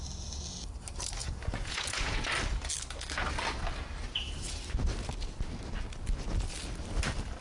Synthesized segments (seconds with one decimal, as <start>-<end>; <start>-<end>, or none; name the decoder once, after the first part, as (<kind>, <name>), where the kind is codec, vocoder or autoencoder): 1.2-2.2 (vocoder, Vocos)